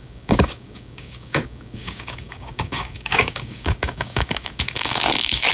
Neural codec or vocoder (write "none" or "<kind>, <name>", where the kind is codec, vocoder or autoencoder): codec, DAC